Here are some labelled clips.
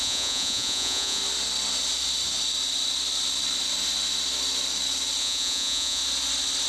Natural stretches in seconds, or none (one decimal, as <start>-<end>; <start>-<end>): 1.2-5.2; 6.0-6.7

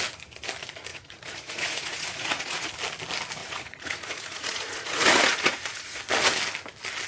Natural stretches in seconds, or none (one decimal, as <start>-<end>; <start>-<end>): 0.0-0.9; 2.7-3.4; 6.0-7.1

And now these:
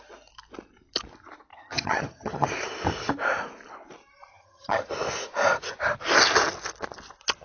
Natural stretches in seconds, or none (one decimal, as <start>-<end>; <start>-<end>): 0.0-1.5; 2.5-4.3; 4.9-7.4

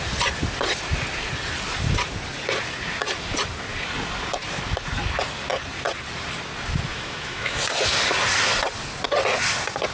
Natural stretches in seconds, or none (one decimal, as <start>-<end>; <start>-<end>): 0.0-6.9; 7.6-9.9

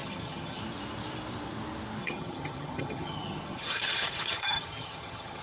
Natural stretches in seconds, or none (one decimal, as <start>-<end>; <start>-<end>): 0.6-2.0